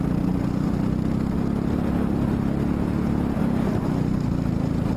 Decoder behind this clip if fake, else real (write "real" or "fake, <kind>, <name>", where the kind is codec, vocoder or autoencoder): real